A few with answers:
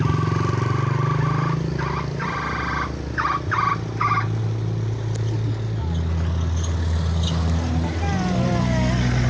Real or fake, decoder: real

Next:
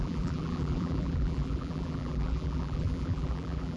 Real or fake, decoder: fake, vocoder, BigVGAN v2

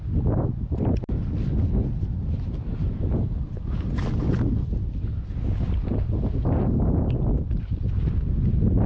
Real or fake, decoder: real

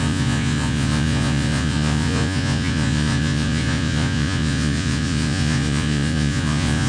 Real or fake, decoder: fake, vocoder, Vocos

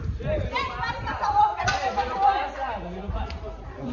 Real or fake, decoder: real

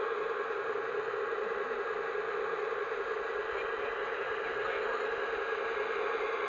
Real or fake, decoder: real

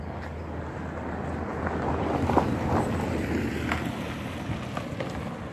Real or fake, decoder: real